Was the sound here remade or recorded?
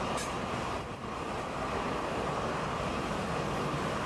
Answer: remade